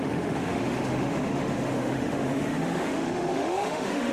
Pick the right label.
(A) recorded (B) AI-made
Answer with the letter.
B